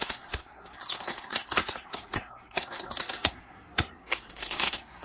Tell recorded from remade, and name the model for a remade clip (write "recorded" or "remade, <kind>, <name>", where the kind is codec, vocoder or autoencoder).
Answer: remade, codec, SNAC